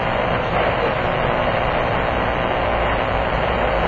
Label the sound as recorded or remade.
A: recorded